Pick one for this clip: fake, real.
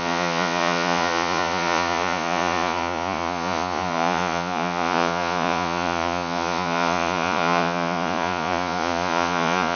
fake